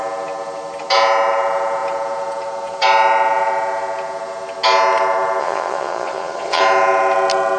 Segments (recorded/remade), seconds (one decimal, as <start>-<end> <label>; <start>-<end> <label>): 0.0-5.4 recorded; 5.4-6.6 remade; 6.6-7.6 recorded